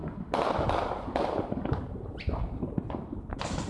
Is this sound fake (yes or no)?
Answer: no